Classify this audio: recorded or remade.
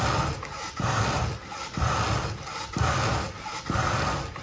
recorded